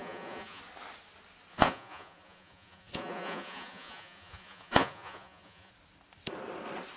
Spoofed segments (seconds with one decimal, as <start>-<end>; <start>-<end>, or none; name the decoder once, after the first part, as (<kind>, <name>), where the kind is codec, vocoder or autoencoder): 0.0-0.6 (vocoder, Vocos); 1.5-5.7